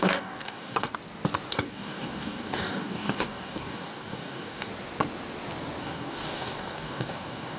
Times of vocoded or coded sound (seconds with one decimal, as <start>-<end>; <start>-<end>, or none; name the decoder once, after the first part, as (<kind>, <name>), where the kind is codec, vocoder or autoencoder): 0.0-0.9 (codec, DAC); 1.5-4.7; 5.8-7.6